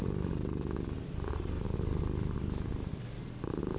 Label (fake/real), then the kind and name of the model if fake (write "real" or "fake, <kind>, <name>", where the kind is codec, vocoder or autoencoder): fake, vocoder, BigVGAN v2